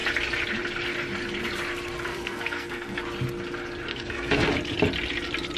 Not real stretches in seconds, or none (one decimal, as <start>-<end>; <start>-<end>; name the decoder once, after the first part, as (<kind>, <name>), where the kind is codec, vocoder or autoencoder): 2.1-3.0 (codec, SNAC); 3.9-4.5